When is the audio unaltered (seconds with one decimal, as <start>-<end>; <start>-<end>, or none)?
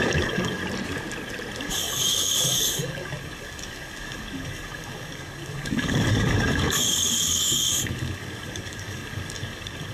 0.6-1.6